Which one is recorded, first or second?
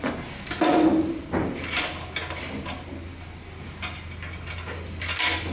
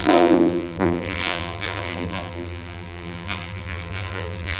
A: first